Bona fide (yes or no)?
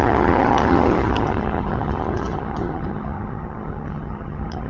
no